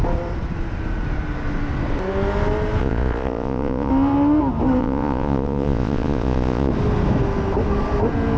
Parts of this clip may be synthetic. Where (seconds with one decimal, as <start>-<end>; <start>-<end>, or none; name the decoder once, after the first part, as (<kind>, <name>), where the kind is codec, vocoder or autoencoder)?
2.8-3.9 (vocoder, Vocos); 4.8-6.7